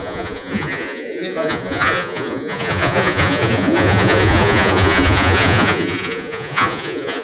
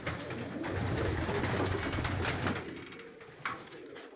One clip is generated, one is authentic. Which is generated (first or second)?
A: first